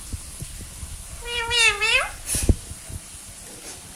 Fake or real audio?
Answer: real